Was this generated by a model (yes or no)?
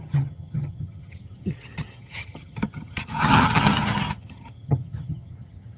yes